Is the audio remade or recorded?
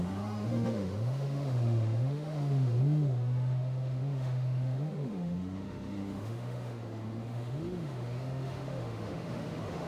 remade